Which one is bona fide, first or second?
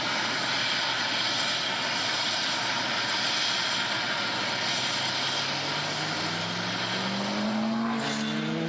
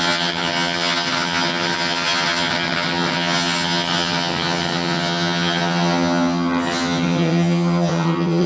first